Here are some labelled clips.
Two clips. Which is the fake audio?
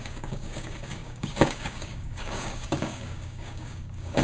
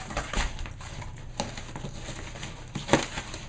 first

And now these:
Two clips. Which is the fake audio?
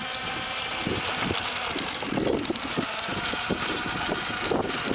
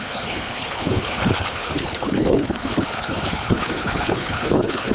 second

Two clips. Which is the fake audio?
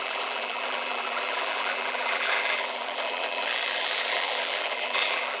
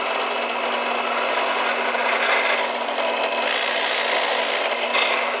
first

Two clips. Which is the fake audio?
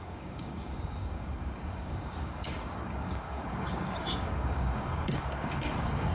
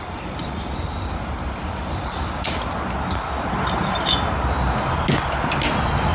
first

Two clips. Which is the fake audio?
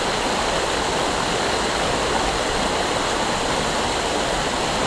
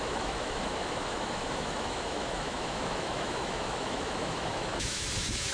second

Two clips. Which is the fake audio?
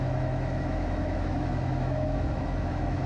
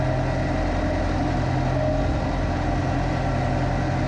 first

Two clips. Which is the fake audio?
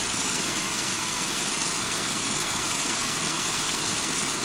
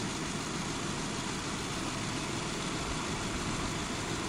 first